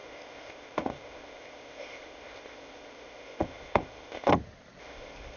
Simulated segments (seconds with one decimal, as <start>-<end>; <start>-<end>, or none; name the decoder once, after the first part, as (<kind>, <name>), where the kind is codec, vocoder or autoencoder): 0.0-4.3 (codec, ZipCodec); 4.8-5.4